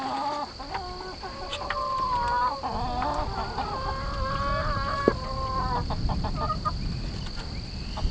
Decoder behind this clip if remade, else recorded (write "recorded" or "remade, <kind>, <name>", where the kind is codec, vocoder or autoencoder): recorded